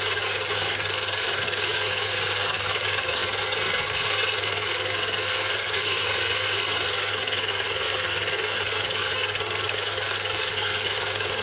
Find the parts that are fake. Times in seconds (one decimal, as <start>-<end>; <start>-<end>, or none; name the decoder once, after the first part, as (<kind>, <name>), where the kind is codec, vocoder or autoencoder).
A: 0.0-11.4 (codec, SNAC)